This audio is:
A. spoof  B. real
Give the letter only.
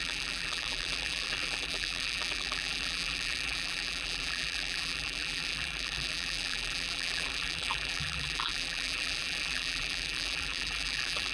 A